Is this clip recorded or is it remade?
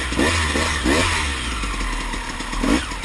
recorded